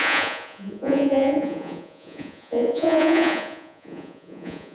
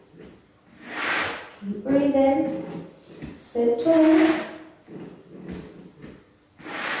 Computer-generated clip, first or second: first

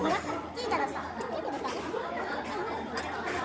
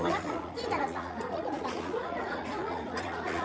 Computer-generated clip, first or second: second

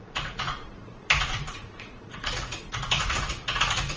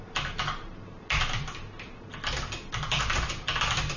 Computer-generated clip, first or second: first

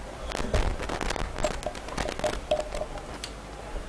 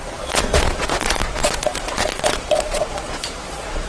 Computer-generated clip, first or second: second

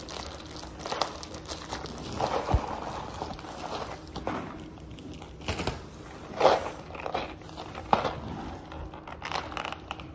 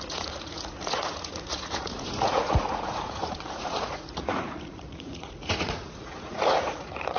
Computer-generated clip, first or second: second